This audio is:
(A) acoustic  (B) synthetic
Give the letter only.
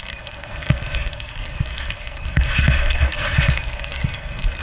B